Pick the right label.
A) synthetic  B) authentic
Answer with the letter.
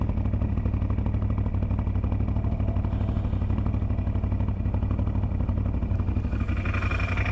B